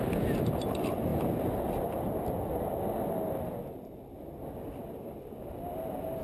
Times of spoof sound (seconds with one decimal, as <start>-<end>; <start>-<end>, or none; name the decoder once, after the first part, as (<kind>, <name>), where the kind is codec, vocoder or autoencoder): none

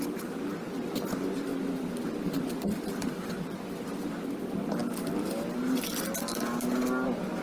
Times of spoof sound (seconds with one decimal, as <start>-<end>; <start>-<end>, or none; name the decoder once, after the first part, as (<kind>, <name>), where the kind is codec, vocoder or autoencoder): 1.5-4.1 (vocoder, BigVGAN v2)

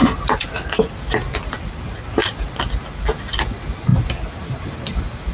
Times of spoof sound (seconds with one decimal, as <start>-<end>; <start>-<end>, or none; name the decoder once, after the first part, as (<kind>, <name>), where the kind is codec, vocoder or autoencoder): 3.9-5.3 (vocoder, BigVGAN v2)

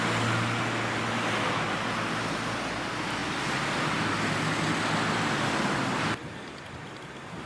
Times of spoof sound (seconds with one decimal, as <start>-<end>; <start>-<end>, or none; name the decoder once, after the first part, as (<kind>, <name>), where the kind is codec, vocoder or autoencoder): none

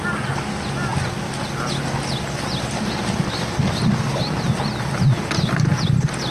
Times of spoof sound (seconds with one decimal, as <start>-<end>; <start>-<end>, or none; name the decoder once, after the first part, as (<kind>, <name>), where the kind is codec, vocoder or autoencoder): 0.9-1.7 (vocoder, BigVGAN v2)

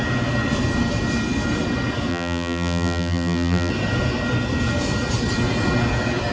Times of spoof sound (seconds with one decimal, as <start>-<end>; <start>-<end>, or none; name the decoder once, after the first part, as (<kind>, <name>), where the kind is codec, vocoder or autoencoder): 2.1-3.7 (vocoder, BigVGAN v2)

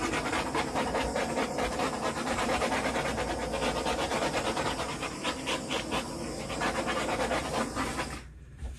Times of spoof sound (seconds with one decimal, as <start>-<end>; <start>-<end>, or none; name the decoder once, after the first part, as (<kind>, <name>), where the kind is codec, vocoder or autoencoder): 0.0-3.4 (vocoder, BigVGAN v2); 4.3-8.8